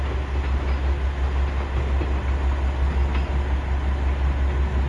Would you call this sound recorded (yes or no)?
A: yes